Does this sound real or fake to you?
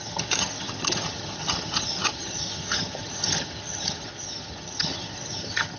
fake